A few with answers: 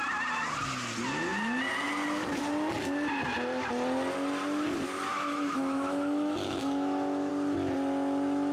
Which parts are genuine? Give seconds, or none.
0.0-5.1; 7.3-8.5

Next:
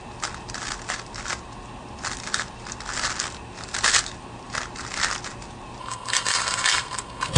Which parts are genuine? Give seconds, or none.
0.0-5.8

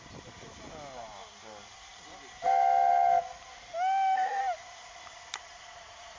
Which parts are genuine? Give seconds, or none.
0.0-3.5; 4.4-6.2